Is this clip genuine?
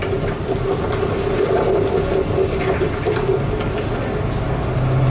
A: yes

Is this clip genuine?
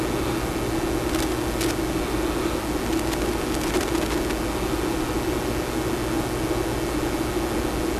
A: yes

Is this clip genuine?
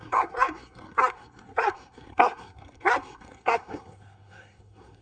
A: no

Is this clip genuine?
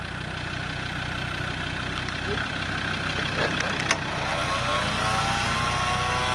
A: yes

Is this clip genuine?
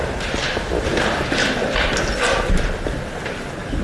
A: yes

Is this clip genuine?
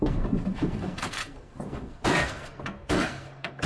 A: no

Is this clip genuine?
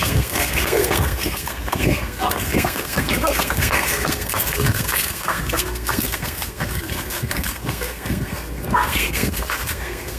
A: no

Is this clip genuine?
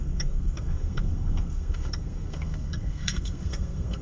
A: no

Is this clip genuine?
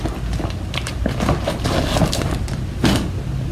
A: yes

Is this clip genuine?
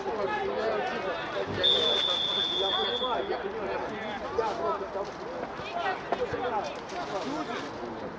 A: yes